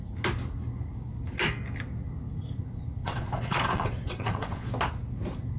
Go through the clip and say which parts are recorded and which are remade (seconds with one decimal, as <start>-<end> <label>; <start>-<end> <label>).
0.0-3.0 recorded; 3.0-4.7 remade; 4.7-5.6 recorded